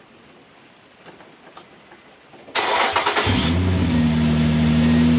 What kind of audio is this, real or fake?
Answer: real